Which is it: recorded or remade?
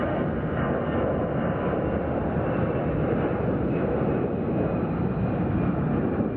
recorded